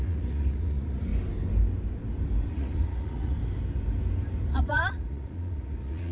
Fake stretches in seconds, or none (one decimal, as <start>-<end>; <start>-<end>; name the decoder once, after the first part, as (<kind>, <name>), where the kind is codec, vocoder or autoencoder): 0.0-1.1 (vocoder, Vocos); 2.5-3.4; 4.5-6.1